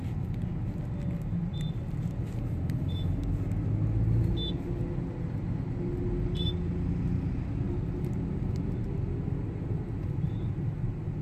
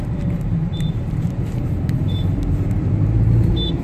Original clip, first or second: first